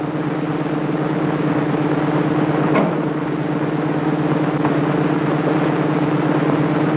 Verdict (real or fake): real